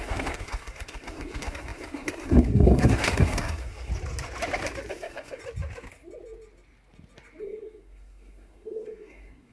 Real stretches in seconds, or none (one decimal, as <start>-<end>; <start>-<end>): 3.9-4.9; 5.4-7.4